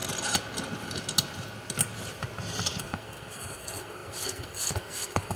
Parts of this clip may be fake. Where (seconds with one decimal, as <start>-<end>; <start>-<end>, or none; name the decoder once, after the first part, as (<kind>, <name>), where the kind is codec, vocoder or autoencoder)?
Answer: 2.8-5.4 (codec, SNAC)